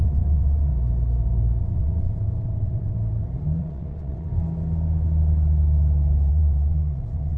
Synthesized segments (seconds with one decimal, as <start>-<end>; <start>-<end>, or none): 0.0-0.7; 1.6-3.0; 3.6-4.3; 6.3-7.4